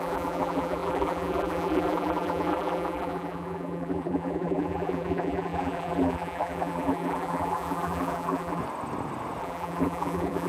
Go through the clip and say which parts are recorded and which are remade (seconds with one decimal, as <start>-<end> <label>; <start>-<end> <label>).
0.0-8.6 remade; 8.6-9.4 recorded; 9.4-10.5 remade

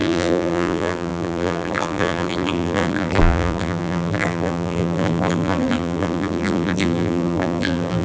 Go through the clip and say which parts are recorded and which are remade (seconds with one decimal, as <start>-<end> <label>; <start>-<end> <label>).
0.0-8.0 remade

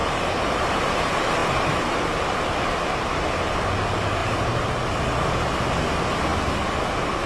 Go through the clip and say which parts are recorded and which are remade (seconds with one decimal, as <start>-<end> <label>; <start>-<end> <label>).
0.0-0.8 remade; 0.8-1.4 recorded; 1.4-2.3 remade; 2.3-4.2 recorded; 4.2-4.7 remade; 4.7-7.3 recorded

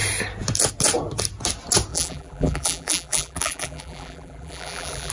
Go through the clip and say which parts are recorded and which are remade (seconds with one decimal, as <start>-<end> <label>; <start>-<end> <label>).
0.0-1.9 recorded; 1.9-5.1 remade

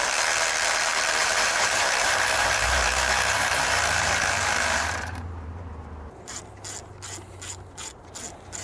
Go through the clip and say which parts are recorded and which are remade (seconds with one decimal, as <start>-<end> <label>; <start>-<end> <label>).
0.0-1.2 recorded; 1.2-5.7 remade; 5.7-8.6 recorded

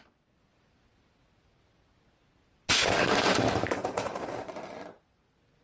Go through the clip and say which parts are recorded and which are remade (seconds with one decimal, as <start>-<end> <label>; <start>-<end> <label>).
0.0-3.8 recorded; 3.8-4.8 remade; 4.8-5.6 recorded

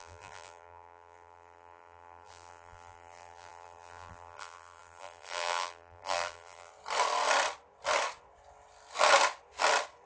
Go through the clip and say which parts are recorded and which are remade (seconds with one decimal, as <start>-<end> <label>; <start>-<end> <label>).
0.0-6.7 remade; 6.7-10.1 recorded

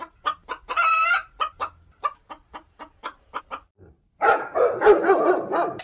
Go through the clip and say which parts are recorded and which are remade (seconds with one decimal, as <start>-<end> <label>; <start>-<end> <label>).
0.0-4.5 remade; 4.5-5.3 recorded; 5.3-5.8 remade